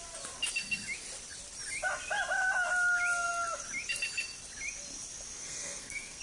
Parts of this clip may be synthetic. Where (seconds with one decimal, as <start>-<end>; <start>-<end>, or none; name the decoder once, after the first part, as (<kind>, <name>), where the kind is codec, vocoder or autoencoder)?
5.4-6.2 (codec, SNAC)